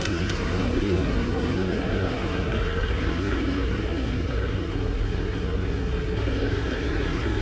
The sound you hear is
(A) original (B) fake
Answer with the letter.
B